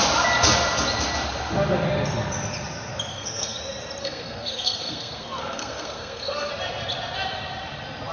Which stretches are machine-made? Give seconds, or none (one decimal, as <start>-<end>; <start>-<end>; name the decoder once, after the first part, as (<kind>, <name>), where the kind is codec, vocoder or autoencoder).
3.1-3.6 (codec, SNAC); 4.0-6.5